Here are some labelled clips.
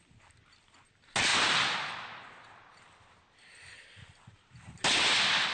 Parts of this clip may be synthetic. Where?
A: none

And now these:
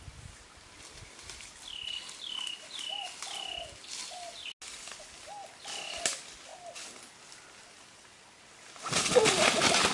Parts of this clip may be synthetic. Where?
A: none

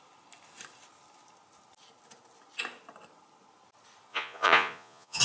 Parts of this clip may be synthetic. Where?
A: 4.1-5.2

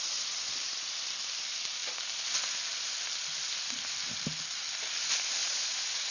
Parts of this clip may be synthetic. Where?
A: 5.4-6.1

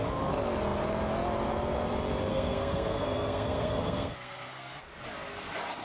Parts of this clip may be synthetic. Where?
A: 2.3-4.8

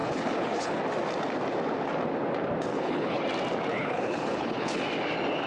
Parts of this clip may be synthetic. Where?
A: 0.0-0.8; 2.7-3.2; 3.7-4.7

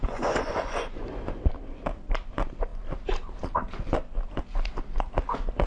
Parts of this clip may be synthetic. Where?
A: 0.0-1.4

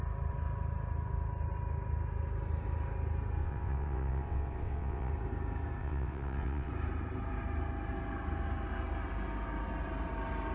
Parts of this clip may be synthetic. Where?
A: 3.4-5.1; 5.8-6.7